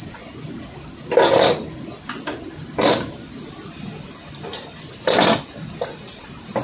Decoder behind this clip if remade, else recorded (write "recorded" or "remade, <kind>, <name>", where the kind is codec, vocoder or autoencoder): recorded